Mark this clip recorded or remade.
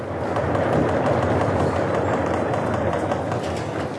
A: recorded